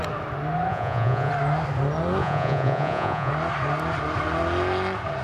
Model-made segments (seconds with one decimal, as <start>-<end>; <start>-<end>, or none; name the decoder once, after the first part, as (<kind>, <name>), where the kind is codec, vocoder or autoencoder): 0.7-1.3 (vocoder, Vocos); 2.2-3.3